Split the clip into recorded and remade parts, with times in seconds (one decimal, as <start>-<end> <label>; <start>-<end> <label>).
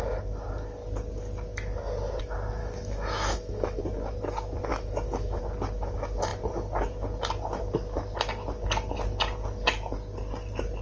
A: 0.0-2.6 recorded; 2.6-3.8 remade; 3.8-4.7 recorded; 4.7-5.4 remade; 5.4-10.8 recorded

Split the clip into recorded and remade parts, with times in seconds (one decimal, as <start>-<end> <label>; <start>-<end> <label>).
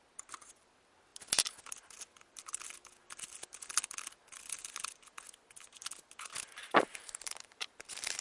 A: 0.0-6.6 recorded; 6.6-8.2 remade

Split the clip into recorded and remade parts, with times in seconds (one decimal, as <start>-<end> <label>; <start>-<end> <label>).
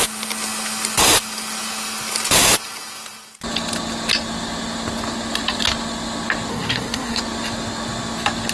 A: 0.0-6.5 recorded; 6.5-7.2 remade; 7.2-8.5 recorded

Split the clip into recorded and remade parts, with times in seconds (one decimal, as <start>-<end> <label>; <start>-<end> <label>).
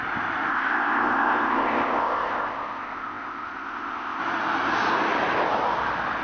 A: 0.0-0.5 recorded; 0.5-4.2 remade; 4.2-6.2 recorded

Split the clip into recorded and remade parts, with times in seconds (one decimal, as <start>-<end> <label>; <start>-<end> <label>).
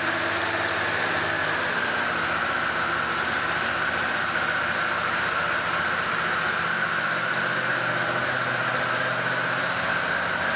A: 0.0-1.4 remade; 1.4-4.8 recorded; 4.8-10.6 remade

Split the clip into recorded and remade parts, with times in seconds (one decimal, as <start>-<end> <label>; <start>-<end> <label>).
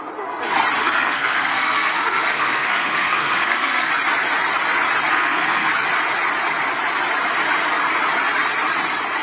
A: 0.0-0.8 recorded; 0.8-3.9 remade; 3.9-5.1 recorded; 5.1-5.7 remade; 5.7-9.2 recorded